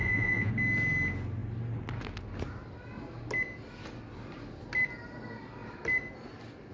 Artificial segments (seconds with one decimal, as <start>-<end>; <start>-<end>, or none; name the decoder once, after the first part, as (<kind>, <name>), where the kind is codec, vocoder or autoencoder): 0.0-0.5 (vocoder, Vocos)